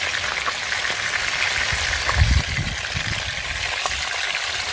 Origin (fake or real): real